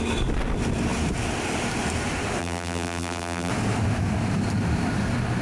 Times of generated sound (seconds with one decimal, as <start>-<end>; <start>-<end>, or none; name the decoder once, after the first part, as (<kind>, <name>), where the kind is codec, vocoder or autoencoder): 2.4-3.5 (vocoder, BigVGAN v2)